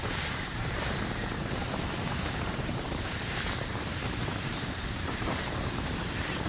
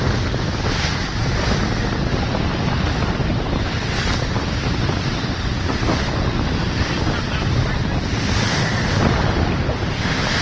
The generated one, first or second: first